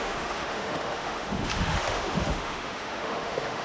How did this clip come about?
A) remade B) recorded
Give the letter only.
A